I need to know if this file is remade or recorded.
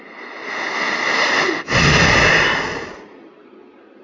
recorded